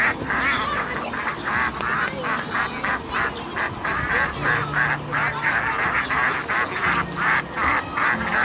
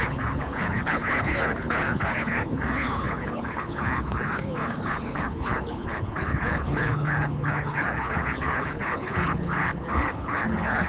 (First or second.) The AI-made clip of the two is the second